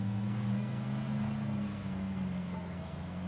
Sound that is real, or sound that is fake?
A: fake